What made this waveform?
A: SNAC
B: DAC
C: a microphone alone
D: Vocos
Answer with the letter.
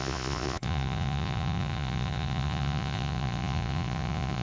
D